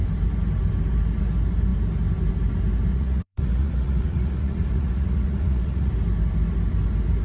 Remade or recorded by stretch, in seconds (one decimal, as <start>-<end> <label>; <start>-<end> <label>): 0.0-2.9 recorded; 2.9-5.9 remade; 5.9-7.2 recorded